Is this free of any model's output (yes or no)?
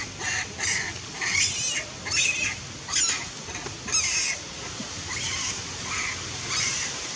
yes